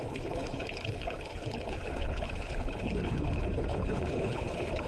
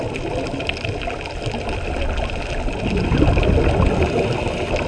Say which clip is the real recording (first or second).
second